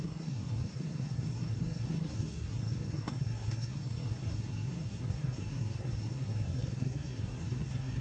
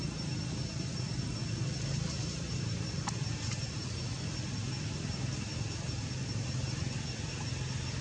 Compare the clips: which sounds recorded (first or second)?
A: second